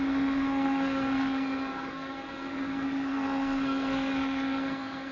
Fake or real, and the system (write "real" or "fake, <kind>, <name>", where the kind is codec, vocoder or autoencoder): fake, codec, SNAC